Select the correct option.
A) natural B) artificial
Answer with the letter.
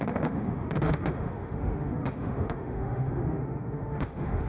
B